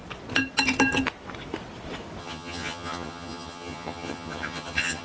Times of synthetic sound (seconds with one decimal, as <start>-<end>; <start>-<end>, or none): 2.2-5.0